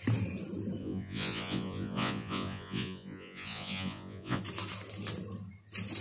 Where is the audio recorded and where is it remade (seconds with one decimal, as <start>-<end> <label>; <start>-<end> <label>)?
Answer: 0.0-0.8 recorded; 0.8-4.4 remade; 4.4-6.0 recorded